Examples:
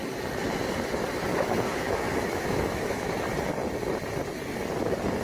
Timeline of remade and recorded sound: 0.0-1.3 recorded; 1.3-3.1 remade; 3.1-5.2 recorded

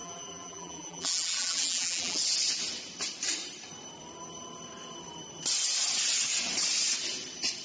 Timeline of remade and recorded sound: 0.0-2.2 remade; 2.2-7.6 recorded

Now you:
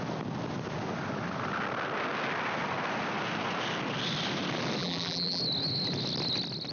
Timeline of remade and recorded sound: 0.0-4.8 recorded; 4.8-5.4 remade; 5.4-6.7 recorded

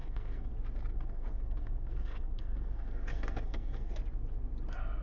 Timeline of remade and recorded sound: 0.0-0.5 remade; 0.5-0.9 recorded; 0.9-3.9 remade; 3.9-5.0 recorded

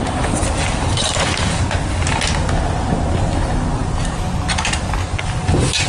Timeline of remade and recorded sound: 0.0-1.6 remade; 1.6-5.9 recorded

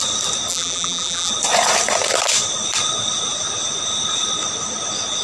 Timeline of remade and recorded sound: 0.0-0.5 recorded; 0.5-1.3 remade; 1.3-5.2 recorded